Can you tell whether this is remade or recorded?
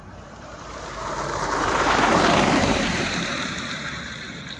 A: remade